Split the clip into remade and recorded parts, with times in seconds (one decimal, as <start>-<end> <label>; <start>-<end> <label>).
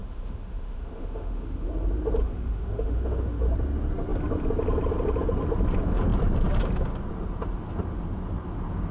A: 0.0-1.7 remade; 1.7-2.2 recorded; 2.2-3.4 remade; 3.4-8.9 recorded